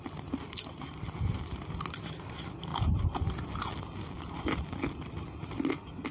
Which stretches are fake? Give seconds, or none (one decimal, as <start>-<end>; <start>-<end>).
none

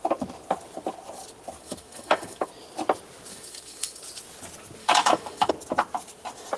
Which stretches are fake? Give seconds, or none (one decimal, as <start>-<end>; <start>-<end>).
1.6-2.5; 3.3-4.0; 4.8-5.5

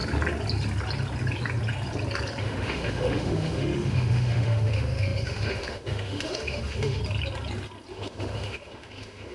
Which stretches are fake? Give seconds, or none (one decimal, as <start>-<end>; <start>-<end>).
2.4-7.0; 7.9-9.3